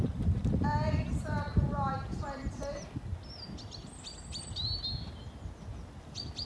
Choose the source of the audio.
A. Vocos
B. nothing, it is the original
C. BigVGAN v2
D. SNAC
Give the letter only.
B